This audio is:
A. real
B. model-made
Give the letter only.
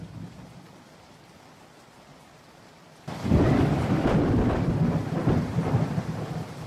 B